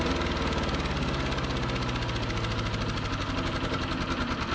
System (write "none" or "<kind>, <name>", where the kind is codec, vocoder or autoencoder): none